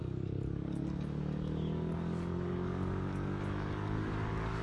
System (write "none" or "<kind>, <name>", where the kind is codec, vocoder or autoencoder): codec, DAC